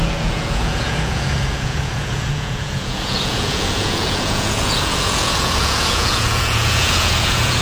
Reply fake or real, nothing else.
fake